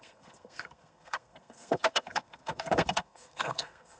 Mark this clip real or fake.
fake